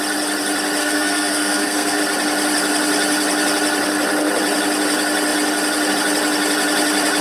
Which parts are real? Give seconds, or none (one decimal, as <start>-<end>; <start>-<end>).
0.0-0.8; 2.0-7.2